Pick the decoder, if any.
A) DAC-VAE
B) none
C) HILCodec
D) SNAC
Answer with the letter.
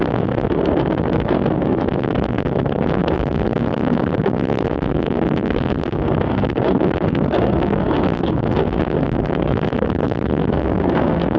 D